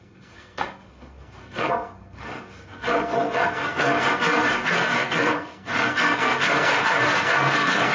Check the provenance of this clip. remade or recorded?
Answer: remade